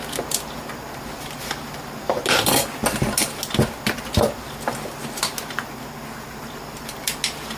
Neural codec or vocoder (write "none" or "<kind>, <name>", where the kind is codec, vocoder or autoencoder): none